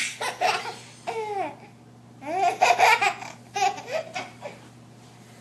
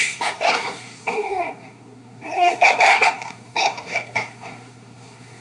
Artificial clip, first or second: second